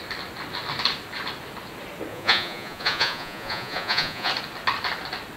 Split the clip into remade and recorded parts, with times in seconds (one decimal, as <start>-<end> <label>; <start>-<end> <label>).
0.0-2.1 recorded; 2.1-4.3 remade; 4.3-5.4 recorded

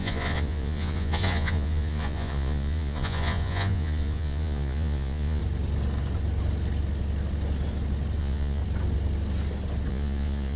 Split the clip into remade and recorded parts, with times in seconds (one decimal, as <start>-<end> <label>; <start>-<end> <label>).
0.0-5.4 remade; 5.4-8.2 recorded; 8.2-8.6 remade; 8.6-9.9 recorded; 9.9-10.6 remade